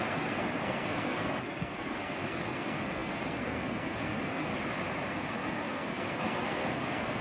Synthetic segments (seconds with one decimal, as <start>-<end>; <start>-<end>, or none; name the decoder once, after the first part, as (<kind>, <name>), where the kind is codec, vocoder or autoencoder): 0.0-4.5 (codec, SNAC); 5.1-7.2